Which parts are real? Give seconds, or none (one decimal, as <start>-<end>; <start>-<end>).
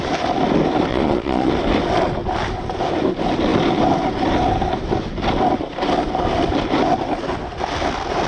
0.0-0.9; 1.5-8.3